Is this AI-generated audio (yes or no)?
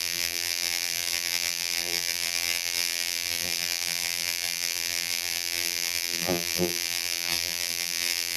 yes